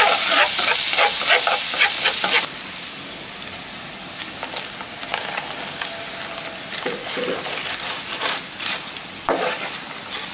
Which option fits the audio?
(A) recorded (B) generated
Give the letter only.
A